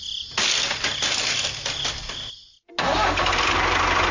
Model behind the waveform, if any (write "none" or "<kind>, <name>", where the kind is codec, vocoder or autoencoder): none